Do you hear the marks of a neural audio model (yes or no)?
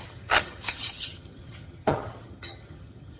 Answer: yes